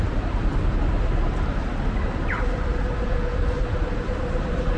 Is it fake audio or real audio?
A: real